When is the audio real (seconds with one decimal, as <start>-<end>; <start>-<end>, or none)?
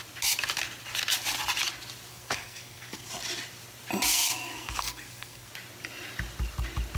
0.0-2.1; 3.1-4.1; 5.5-7.0